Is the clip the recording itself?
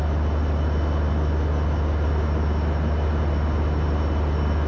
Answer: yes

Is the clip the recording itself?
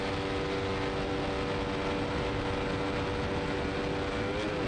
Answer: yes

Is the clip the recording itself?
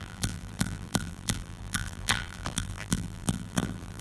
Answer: no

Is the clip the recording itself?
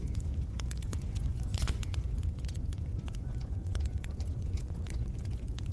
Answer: no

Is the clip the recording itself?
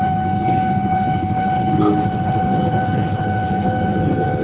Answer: no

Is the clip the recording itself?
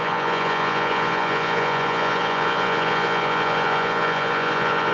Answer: no